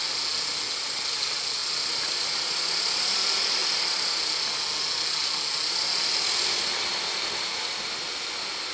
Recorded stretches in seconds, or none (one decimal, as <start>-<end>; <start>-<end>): 0.0-8.7